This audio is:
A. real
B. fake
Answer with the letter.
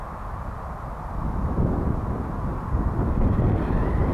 A